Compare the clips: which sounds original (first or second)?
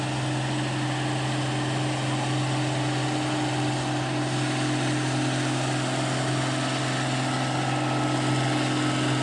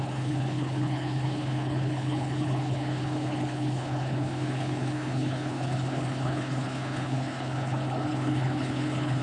first